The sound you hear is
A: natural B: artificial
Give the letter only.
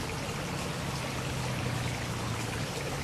A